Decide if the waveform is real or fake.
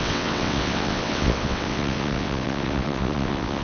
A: fake